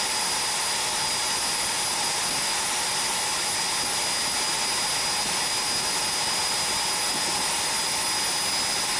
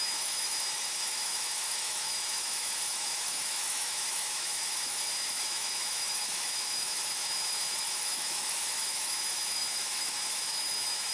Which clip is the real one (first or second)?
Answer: first